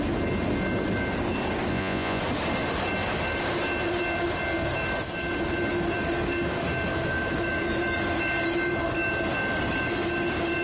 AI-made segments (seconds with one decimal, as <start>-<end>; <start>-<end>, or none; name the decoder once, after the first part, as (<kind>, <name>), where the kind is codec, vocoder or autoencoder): 1.7-2.2 (vocoder, Vocos)